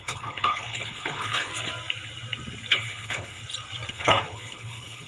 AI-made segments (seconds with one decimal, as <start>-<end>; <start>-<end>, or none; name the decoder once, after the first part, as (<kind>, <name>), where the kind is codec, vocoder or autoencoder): 0.0-1.5 (codec, HILCodec); 2.7-3.4; 3.9-5.1